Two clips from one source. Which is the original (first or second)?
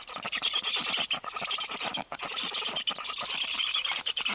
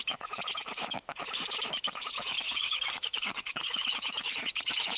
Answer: first